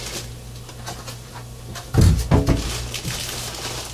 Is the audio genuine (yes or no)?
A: yes